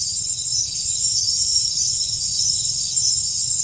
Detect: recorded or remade remade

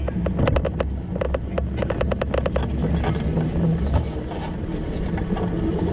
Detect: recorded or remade recorded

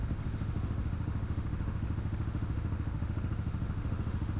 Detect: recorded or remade remade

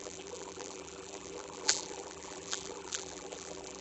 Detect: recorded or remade remade